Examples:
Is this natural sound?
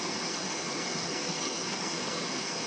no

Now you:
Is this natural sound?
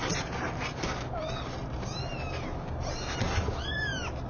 yes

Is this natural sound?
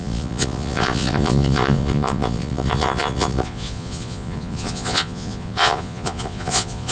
no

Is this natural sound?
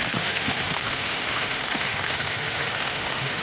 no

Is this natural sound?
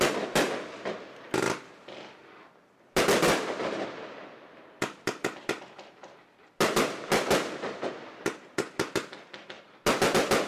yes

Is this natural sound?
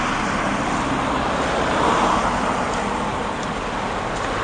yes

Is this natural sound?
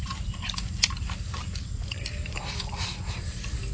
yes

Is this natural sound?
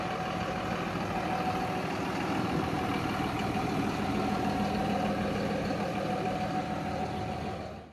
yes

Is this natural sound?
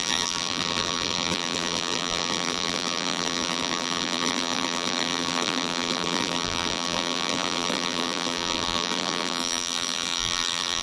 no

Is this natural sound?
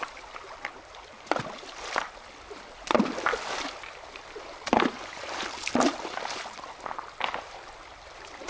no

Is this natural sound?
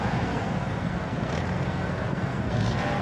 no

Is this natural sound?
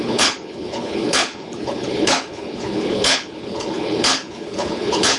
no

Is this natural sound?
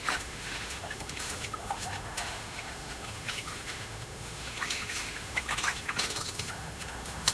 no